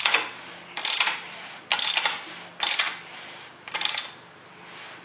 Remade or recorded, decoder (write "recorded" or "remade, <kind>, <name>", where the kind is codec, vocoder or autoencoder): recorded